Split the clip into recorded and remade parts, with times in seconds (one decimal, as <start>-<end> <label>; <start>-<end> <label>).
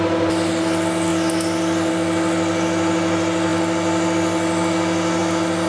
0.0-5.7 recorded